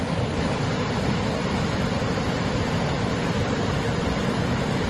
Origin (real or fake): real